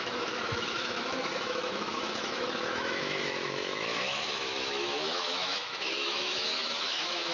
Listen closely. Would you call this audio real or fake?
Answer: fake